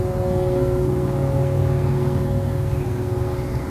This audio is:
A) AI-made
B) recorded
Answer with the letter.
A